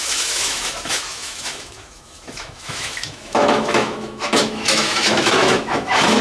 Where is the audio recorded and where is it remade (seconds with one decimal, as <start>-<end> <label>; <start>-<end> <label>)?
0.0-6.2 remade

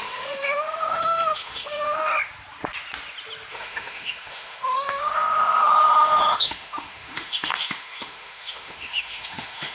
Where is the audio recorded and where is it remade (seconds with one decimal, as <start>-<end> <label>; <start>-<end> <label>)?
0.0-2.1 remade; 2.1-3.5 recorded; 3.5-9.7 remade

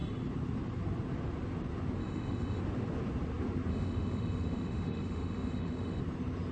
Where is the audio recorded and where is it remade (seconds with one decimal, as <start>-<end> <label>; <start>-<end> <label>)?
0.0-2.0 recorded; 2.0-2.6 remade; 2.6-3.7 recorded; 3.7-6.0 remade; 6.0-6.5 recorded